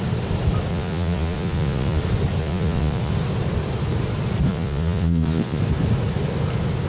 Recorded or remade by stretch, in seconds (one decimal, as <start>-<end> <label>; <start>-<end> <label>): 0.0-0.7 recorded; 0.7-2.0 remade; 2.0-2.4 recorded; 2.4-3.1 remade; 3.1-4.5 recorded; 4.5-5.6 remade; 5.6-6.9 recorded